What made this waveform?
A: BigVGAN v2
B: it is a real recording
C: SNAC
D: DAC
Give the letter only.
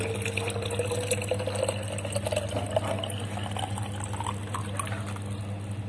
B